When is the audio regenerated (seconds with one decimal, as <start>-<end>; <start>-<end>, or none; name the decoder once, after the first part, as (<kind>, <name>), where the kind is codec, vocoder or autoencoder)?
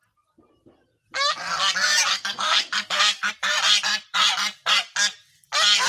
2.1-3.3 (codec, SNAC)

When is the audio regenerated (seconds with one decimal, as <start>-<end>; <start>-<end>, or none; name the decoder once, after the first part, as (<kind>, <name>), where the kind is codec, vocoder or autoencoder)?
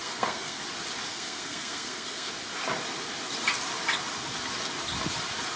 0.0-0.6 (codec, SNAC); 1.1-2.3